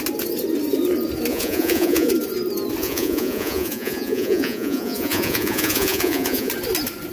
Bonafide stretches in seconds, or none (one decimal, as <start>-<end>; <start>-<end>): 0.0-1.3; 2.1-2.8; 6.5-7.1